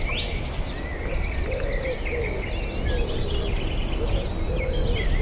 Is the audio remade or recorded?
recorded